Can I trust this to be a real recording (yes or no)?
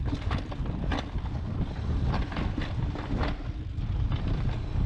yes